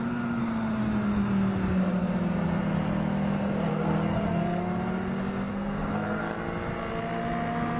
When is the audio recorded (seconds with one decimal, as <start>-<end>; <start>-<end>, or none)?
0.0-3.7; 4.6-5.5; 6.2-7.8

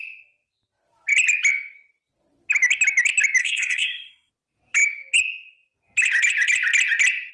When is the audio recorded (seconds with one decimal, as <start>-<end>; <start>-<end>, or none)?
0.0-3.4; 4.3-7.3

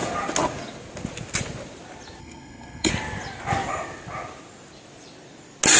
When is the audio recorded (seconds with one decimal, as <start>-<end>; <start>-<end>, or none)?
0.0-2.2; 2.9-5.8